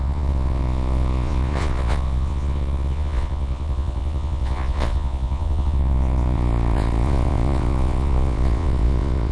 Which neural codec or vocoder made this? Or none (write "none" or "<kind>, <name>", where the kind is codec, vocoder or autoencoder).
vocoder, Vocos